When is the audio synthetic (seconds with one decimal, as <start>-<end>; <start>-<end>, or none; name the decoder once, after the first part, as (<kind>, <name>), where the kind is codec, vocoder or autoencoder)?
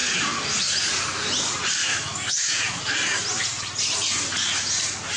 1.8-2.8 (autoencoder, DAC-VAE)